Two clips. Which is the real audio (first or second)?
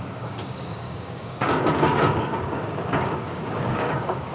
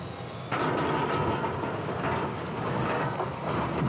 second